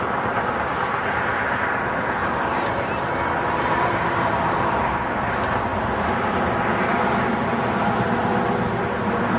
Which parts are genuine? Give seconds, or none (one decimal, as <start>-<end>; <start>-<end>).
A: 5.7-6.7; 8.2-9.0